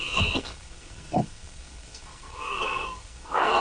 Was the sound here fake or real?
fake